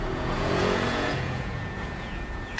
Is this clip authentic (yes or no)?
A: no